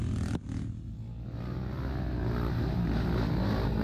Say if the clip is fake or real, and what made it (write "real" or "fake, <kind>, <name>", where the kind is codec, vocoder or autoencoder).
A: real